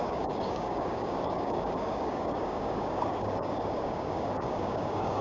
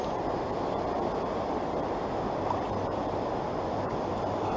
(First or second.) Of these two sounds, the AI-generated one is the first